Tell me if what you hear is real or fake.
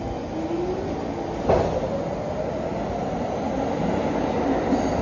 real